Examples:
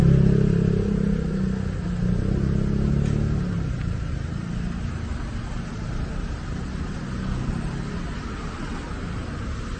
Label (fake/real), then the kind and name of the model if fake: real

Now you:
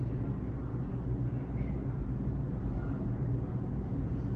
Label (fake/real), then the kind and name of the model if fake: real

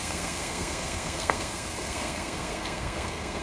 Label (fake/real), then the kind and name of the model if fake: fake, codec, SNAC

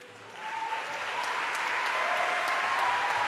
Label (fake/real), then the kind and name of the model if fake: real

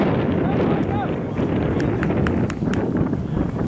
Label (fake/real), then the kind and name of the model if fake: real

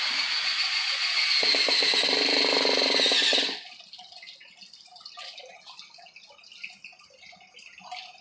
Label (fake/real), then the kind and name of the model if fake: real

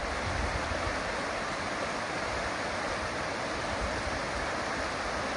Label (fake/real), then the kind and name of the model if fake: real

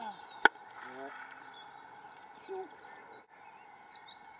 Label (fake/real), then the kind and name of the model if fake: real